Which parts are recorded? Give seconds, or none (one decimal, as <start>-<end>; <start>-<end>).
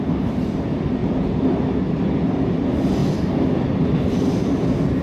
1.0-1.9; 3.0-5.0